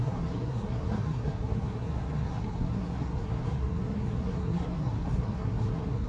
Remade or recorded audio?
remade